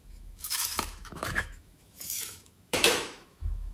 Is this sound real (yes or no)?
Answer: no